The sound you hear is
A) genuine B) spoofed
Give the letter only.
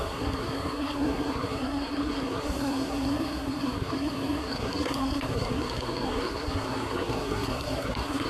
B